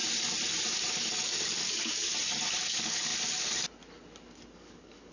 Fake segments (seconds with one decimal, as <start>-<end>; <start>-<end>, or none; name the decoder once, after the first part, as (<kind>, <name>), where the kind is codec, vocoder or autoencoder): 1.7-2.1 (codec, DAC); 2.7-3.1; 4.5-5.1